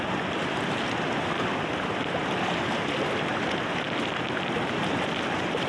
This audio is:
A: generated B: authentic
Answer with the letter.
B